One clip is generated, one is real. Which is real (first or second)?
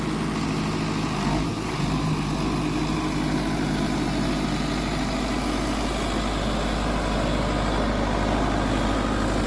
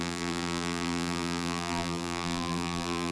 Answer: first